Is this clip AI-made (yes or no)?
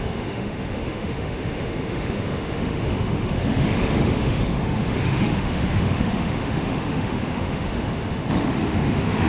yes